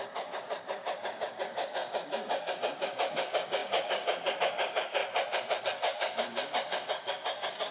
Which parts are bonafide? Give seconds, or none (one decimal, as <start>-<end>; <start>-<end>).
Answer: 5.0-5.6